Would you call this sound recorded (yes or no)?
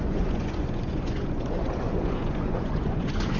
no